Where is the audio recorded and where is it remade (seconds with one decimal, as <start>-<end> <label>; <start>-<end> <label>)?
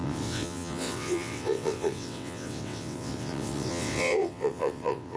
0.0-5.2 remade